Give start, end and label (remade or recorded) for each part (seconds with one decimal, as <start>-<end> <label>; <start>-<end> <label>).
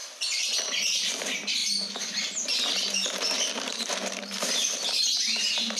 0.0-0.6 recorded; 0.6-5.8 remade